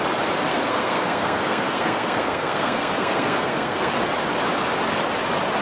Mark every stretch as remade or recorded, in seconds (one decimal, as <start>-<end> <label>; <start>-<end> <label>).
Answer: 0.0-0.5 recorded; 0.5-3.9 remade; 3.9-5.6 recorded